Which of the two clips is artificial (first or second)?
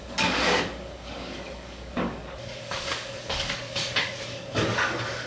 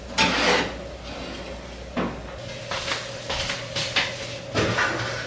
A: first